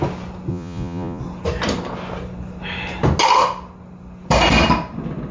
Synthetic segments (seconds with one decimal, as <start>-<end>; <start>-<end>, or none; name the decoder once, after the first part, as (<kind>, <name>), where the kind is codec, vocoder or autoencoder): 0.5-1.2 (vocoder, Vocos)